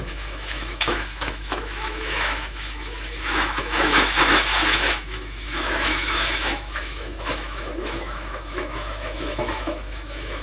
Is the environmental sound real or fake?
fake